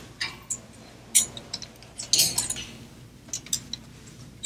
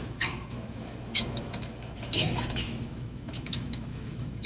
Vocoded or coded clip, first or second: second